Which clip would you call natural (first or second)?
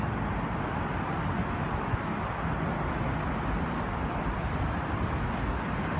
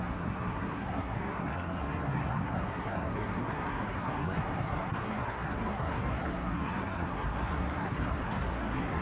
first